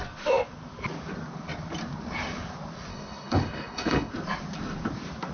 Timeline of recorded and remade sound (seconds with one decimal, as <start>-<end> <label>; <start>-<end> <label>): 0.0-2.9 recorded; 2.9-4.1 remade; 4.1-5.3 recorded